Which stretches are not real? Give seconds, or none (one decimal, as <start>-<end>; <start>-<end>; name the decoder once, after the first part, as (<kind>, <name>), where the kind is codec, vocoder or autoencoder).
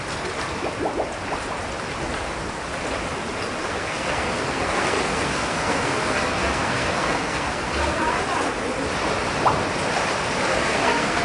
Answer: 3.6-8.2 (codec, SNAC); 10.5-11.2